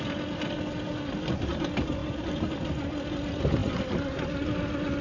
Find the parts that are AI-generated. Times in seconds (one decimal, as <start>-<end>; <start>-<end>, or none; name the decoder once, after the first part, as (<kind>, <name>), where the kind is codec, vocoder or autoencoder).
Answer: 2.0-2.5 (vocoder, BigVGAN v2)